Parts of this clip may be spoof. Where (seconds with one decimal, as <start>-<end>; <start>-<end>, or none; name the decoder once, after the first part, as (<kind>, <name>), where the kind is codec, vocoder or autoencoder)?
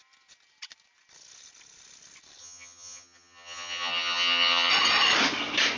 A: 2.4-4.7 (vocoder, HiFi-GAN)